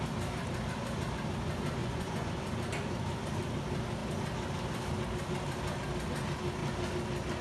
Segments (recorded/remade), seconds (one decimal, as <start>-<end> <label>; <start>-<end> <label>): 0.0-1.8 recorded; 1.8-2.3 remade; 2.3-7.4 recorded